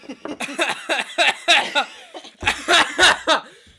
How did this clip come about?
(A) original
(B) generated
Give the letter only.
A